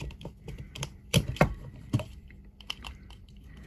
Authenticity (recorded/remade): remade